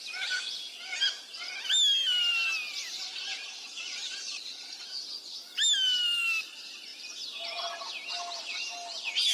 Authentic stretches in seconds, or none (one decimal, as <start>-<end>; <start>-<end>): 0.0-9.3